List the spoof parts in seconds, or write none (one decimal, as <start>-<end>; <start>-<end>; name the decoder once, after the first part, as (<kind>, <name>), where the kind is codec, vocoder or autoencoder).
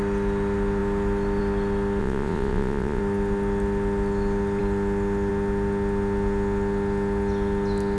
2.0-3.0 (vocoder, Vocos)